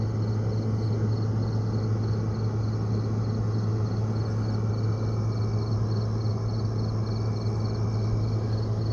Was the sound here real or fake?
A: real